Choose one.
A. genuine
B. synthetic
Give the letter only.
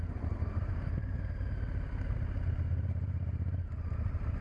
B